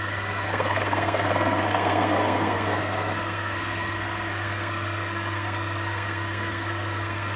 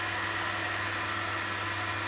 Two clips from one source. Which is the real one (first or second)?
second